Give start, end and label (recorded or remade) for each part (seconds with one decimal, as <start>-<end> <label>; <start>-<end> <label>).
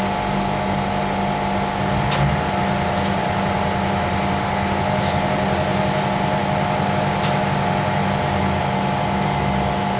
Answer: 0.0-10.0 recorded